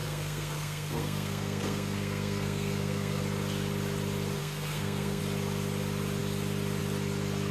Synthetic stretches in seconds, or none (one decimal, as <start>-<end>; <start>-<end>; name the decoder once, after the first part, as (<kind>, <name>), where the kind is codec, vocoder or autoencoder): 0.0-3.2 (codec, SNAC); 4.4-5.2

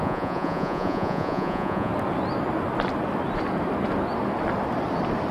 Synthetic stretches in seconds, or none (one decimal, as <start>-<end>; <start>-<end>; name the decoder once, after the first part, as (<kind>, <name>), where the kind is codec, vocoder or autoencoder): 0.0-1.9 (vocoder, Vocos)

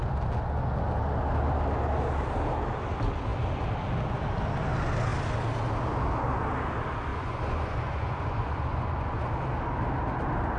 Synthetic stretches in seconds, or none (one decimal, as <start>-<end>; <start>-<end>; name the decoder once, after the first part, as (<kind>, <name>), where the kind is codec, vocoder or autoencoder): 7.1-9.3 (vocoder, Vocos)

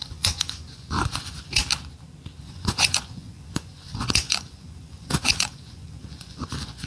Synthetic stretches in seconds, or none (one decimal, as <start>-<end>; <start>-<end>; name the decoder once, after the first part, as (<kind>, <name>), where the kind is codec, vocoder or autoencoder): 0.0-1.6 (vocoder, Vocos); 2.4-6.9